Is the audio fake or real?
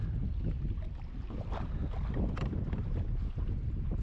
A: real